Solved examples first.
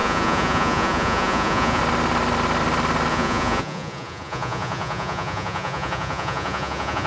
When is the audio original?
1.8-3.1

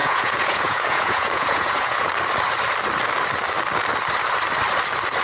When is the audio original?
2.1-5.2

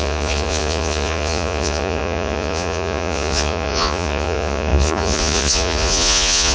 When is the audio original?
none

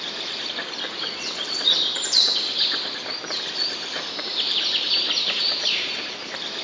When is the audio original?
0.0-6.6

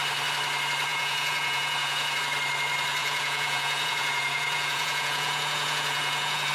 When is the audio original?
0.0-0.9; 2.2-3.0